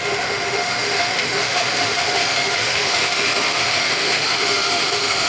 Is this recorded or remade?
remade